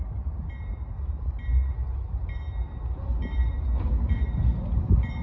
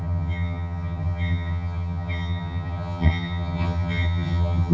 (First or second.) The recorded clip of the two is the first